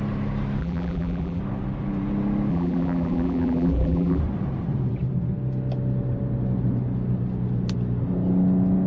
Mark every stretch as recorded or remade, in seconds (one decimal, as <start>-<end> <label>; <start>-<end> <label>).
0.0-0.6 recorded; 0.6-1.4 remade; 1.4-2.5 recorded; 2.5-4.2 remade; 4.2-8.9 recorded